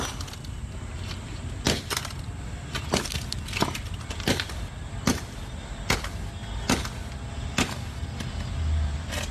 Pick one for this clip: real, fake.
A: real